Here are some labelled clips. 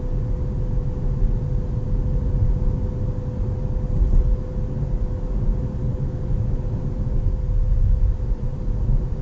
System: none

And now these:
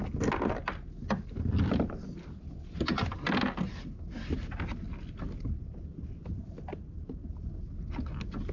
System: none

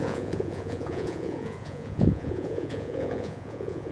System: vocoder, Vocos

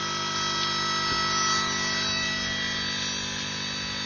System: none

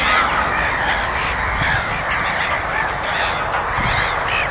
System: none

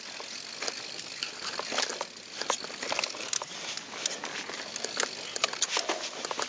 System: none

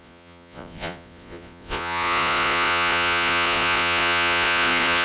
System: vocoder, Vocos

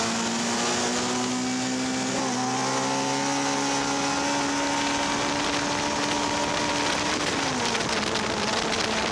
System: none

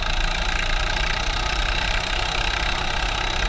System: none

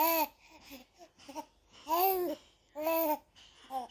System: none